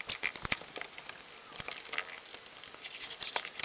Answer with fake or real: real